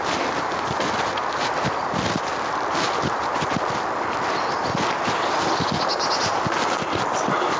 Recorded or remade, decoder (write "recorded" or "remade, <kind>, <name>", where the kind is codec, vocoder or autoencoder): recorded